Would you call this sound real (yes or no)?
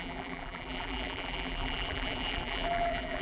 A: no